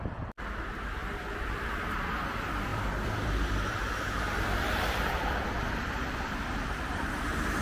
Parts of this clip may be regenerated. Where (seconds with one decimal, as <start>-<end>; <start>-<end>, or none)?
1.0-1.7; 2.7-7.1